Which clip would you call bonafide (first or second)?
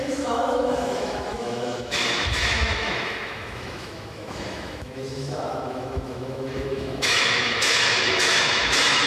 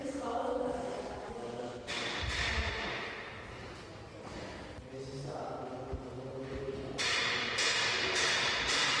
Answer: second